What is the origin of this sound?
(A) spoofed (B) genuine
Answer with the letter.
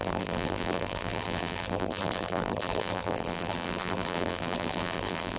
A